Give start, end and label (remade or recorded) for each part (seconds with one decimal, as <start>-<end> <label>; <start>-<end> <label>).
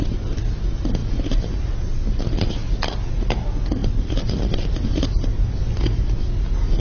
0.0-6.8 recorded